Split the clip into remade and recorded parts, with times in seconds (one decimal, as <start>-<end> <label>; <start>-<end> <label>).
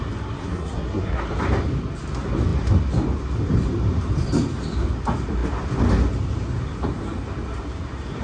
0.0-0.4 recorded; 0.4-1.2 remade; 1.2-8.2 recorded